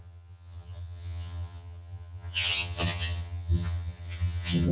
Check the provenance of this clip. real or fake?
fake